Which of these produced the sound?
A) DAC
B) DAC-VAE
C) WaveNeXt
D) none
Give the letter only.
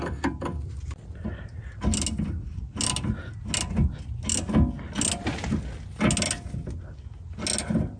D